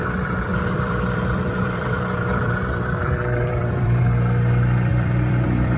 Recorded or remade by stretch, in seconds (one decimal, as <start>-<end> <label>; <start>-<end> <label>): 0.0-0.5 recorded; 0.5-4.0 remade; 4.0-4.9 recorded; 4.9-5.8 remade